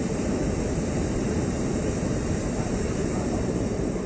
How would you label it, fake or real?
fake